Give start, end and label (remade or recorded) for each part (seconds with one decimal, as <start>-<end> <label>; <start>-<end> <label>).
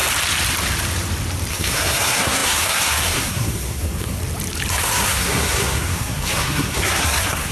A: 0.0-1.5 recorded; 1.5-4.2 remade; 4.2-4.7 recorded; 4.7-7.5 remade